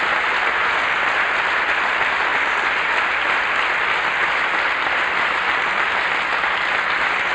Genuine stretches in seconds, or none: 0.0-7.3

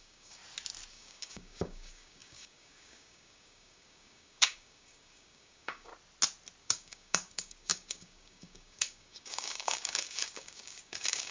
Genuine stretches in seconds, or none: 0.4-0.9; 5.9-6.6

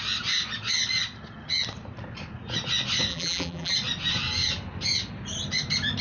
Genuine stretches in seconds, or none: 0.0-3.1; 3.7-6.0

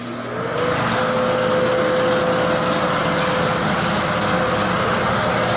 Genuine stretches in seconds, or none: 0.0-5.6

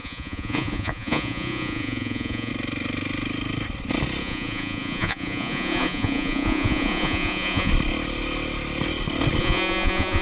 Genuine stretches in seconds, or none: 2.5-4.2; 7.7-9.4

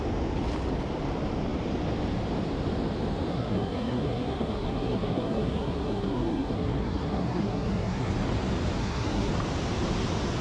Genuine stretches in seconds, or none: 0.0-3.3; 8.1-8.8; 9.3-10.4

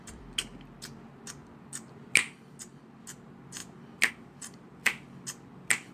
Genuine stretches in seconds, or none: 0.0-5.9